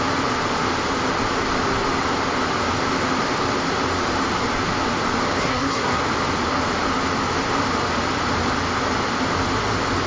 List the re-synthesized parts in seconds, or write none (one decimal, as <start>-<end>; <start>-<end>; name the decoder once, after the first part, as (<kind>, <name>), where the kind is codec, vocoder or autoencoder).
5.4-6.0 (codec, SNAC)

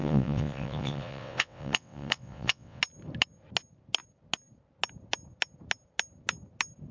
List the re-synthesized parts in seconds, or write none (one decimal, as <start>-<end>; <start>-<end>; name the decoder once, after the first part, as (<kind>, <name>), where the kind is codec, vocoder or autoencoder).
0.0-2.8 (vocoder, WaveNeXt)

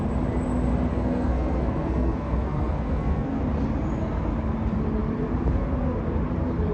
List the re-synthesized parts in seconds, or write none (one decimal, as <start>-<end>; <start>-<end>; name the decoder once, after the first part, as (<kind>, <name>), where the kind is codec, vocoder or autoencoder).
0.9-3.4 (codec, SNAC)

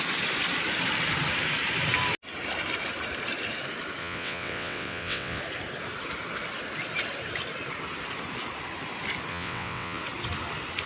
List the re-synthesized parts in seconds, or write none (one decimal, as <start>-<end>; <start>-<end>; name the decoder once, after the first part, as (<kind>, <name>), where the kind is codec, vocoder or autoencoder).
4.0-5.4 (vocoder, WaveNeXt); 9.3-10.0

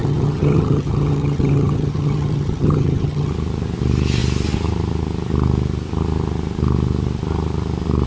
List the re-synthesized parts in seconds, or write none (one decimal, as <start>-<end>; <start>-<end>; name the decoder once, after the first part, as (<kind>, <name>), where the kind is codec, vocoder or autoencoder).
0.0-3.3 (vocoder, HiFi-GAN)

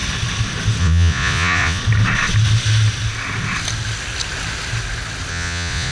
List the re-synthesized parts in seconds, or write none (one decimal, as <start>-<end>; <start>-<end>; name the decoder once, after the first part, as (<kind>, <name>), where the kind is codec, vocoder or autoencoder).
0.8-1.8 (vocoder, Vocos); 5.3-5.9